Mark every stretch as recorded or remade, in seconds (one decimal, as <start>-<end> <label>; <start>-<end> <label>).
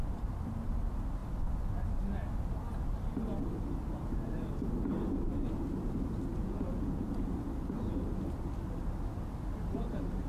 0.0-6.3 recorded; 6.3-7.3 remade; 7.3-10.3 recorded